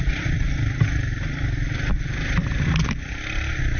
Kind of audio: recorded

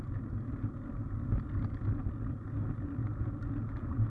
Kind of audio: recorded